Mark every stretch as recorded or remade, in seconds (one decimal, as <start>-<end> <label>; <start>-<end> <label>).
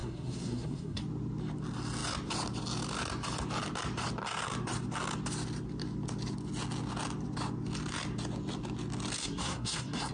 0.0-1.0 remade; 1.0-9.2 recorded; 9.2-10.1 remade